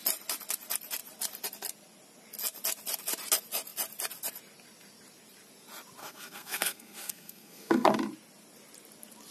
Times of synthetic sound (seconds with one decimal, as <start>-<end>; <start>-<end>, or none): 6.0-7.9